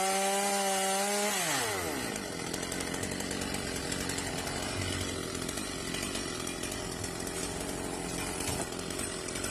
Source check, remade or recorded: recorded